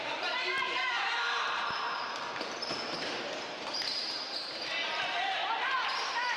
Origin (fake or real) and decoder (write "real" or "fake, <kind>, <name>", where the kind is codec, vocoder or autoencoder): fake, vocoder, BigVGAN v2